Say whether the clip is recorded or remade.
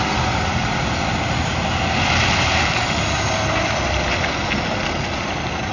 recorded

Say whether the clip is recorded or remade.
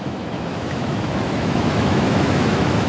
remade